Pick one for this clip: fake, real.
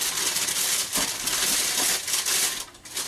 real